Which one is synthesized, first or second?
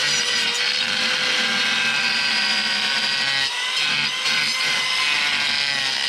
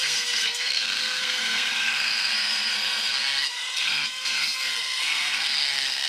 second